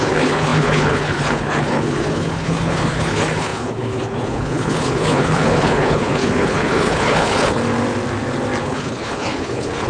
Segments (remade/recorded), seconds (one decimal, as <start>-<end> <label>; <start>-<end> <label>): 0.0-7.6 remade; 7.6-8.6 recorded; 8.6-9.9 remade